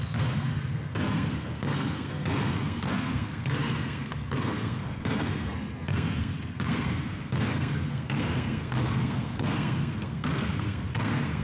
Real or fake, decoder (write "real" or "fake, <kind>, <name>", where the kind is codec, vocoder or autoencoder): fake, codec, SNAC